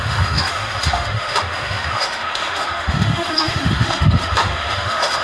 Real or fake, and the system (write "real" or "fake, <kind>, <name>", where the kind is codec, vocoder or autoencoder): fake, autoencoder, DAC-VAE